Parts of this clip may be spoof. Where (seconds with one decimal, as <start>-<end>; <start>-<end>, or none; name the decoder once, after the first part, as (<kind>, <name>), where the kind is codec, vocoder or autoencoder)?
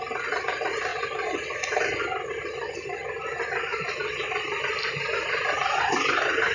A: 3.7-5.8 (vocoder, BigVGAN v2)